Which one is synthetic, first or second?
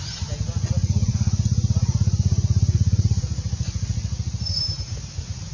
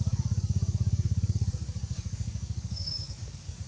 second